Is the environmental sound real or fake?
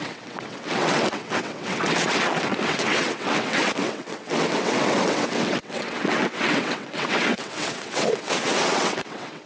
fake